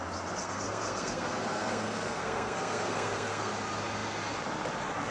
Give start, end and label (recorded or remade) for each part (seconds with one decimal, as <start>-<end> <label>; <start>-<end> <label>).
0.0-0.4 recorded; 0.4-3.5 remade; 3.5-5.1 recorded